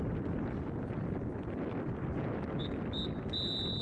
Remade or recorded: recorded